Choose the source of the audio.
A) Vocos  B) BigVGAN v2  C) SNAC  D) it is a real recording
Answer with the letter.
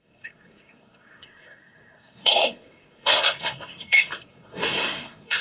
C